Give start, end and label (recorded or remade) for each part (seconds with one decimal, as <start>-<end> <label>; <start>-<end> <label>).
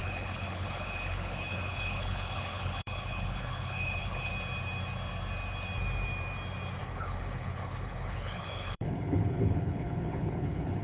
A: 0.0-4.3 remade; 4.3-6.8 recorded; 6.8-10.8 remade